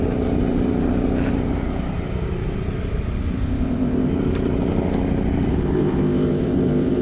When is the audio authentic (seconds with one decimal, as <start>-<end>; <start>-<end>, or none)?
0.0-3.4; 4.1-5.5